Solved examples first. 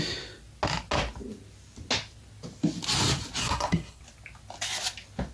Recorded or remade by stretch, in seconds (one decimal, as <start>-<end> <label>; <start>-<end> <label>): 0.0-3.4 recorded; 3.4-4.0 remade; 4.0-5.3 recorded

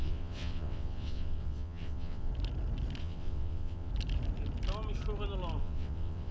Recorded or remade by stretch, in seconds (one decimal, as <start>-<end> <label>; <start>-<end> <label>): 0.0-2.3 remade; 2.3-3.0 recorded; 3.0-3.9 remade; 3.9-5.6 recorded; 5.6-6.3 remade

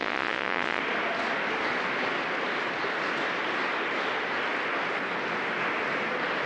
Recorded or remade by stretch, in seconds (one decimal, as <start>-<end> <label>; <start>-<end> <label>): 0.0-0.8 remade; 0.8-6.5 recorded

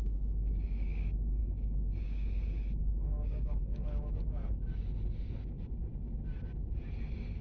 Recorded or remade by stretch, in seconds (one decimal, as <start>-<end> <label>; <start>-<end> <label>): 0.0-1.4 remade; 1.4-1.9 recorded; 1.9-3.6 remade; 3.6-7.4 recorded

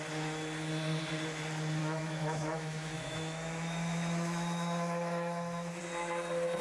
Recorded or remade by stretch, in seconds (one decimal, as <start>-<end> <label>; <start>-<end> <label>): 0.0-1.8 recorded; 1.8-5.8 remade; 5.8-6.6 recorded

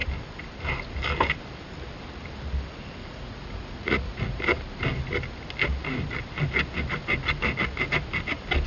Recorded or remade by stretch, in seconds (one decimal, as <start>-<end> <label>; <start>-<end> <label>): 0.0-3.0 recorded; 3.0-4.4 remade; 4.4-8.7 recorded

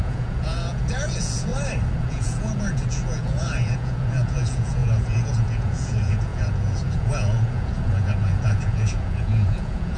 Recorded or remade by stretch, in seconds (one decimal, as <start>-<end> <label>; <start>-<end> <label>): 0.0-1.5 remade; 1.5-2.0 recorded; 2.0-10.0 remade

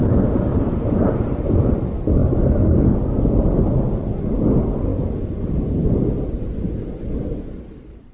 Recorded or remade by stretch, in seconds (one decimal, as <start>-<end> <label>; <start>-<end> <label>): 0.0-0.5 recorded; 0.5-1.7 remade; 1.7-8.1 recorded